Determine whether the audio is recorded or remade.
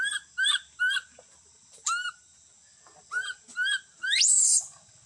recorded